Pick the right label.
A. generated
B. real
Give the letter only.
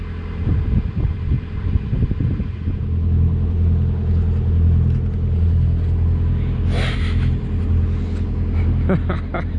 B